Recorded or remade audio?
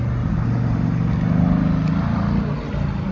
recorded